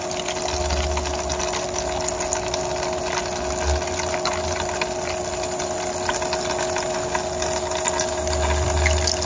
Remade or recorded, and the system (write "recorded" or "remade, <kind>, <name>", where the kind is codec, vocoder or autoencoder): recorded